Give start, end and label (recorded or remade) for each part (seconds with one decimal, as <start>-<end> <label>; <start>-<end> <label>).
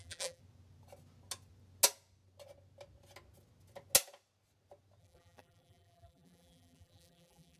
0.0-0.4 remade; 0.4-5.0 recorded; 5.0-7.6 remade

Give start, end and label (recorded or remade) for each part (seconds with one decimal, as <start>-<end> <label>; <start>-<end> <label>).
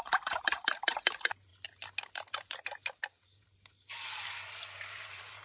0.0-1.5 remade; 1.5-2.6 recorded; 2.6-5.4 remade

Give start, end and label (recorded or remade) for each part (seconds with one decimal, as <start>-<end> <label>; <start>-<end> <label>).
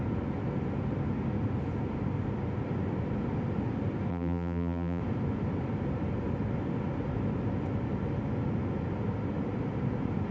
0.0-4.1 recorded; 4.1-5.0 remade; 5.0-10.3 recorded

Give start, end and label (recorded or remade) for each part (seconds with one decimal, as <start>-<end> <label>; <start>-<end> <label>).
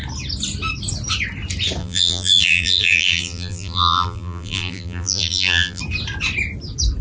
0.0-1.8 recorded; 1.8-5.8 remade; 5.8-7.0 recorded